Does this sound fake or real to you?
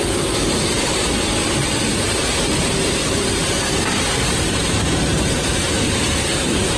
fake